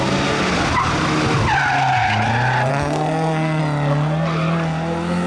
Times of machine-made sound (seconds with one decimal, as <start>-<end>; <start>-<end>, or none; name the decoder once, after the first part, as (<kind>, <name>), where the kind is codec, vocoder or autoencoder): 2.7-3.6 (codec, SNAC)